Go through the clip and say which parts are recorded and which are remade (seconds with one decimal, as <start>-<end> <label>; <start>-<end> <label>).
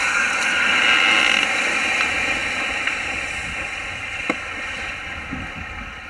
0.0-6.1 recorded